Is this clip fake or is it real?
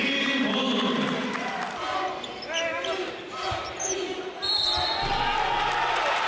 real